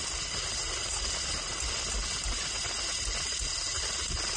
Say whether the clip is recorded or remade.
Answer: recorded